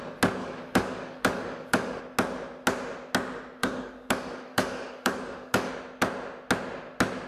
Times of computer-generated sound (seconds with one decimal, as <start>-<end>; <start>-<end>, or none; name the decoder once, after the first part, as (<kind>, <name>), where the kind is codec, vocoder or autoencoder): 0.4-2.0 (codec, DAC); 3.6-5.7